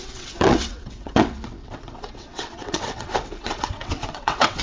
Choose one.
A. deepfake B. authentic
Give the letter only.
A